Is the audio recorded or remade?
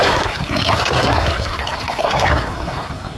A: remade